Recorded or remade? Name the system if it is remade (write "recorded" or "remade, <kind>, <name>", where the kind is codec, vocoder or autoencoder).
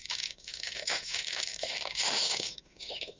remade, autoencoder, DAC-VAE